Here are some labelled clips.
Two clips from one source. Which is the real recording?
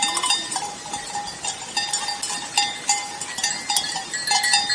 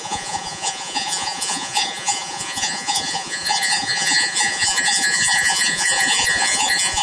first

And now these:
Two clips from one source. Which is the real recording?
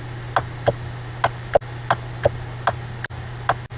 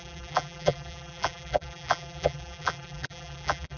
first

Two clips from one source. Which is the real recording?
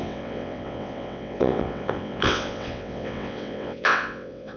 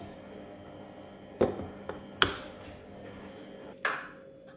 second